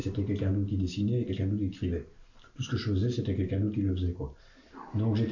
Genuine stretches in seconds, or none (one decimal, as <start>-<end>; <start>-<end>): 0.0-5.3

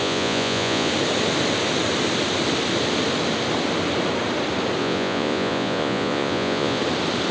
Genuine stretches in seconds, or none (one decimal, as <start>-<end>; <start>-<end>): 0.9-4.8; 6.8-7.3

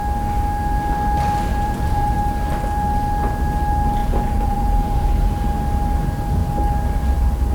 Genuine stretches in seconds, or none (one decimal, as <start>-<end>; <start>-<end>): 0.0-1.5; 2.2-4.0; 5.3-7.5

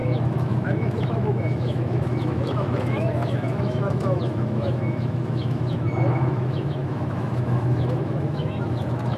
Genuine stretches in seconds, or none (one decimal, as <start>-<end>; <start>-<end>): none

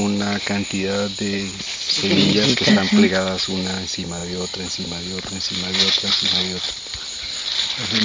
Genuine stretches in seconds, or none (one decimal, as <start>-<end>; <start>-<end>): 0.0-8.0

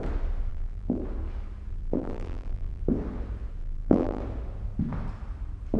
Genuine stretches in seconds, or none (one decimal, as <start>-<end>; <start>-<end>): 0.0-0.5; 1.0-1.7; 2.8-3.6; 4.2-5.8